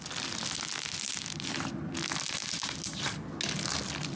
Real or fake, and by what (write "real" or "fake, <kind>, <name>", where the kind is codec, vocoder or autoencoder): real